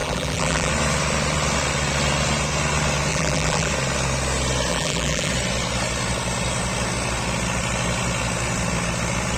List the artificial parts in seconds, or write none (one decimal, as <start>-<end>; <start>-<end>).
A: 0.0-0.7; 3.1-3.7; 4.7-5.3